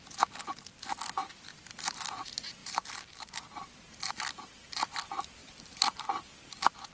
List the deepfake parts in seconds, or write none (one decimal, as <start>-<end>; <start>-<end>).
1.2-2.1; 2.6-4.1; 5.4-6.0